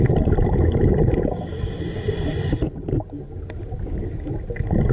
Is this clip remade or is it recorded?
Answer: recorded